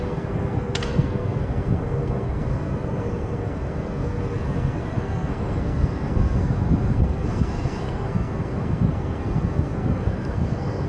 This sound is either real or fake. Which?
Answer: fake